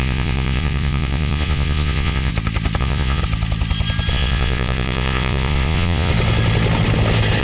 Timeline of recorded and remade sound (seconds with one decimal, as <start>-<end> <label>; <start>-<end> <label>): 0.0-2.3 remade; 2.3-2.8 recorded; 2.8-3.2 remade; 3.2-4.1 recorded; 4.1-6.1 remade; 6.1-7.4 recorded